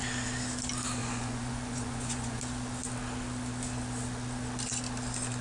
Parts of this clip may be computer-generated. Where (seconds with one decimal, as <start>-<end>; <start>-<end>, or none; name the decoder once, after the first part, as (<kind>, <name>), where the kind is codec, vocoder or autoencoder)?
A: 1.0-2.4 (vocoder, Vocos)